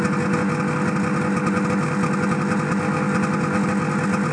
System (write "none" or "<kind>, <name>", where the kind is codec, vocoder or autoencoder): none